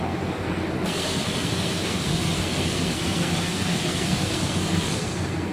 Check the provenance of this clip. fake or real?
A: fake